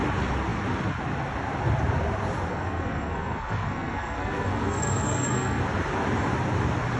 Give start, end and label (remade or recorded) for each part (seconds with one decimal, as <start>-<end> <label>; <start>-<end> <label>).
0.0-2.5 recorded; 2.5-5.6 remade; 5.6-7.0 recorded